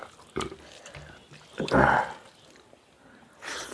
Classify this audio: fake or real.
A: real